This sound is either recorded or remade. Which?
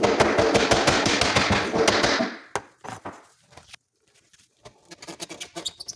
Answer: recorded